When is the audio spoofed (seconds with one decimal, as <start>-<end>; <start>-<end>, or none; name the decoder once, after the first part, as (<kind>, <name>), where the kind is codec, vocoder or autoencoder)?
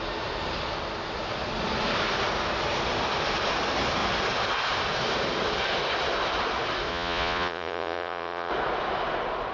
6.9-8.5 (vocoder, Vocos)